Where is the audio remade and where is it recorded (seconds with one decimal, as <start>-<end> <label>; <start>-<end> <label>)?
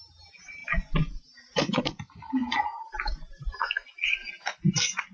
0.0-5.1 recorded